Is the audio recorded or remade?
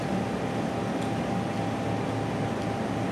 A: recorded